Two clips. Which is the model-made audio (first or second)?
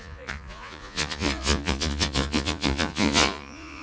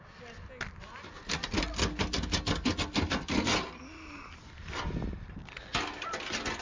first